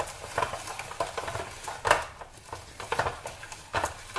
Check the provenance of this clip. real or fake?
real